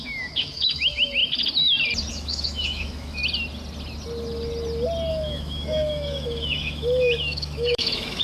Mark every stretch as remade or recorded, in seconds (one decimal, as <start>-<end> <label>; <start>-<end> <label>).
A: 0.0-1.2 remade; 1.2-2.1 recorded; 2.1-3.2 remade; 3.2-5.1 recorded; 5.1-8.2 remade